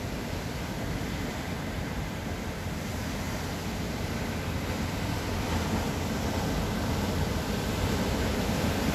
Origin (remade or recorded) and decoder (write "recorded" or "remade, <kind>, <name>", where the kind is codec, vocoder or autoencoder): recorded